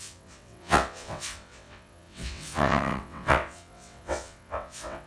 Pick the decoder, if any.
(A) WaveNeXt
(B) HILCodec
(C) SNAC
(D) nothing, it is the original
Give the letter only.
A